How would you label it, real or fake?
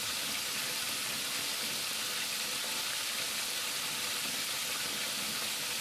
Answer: real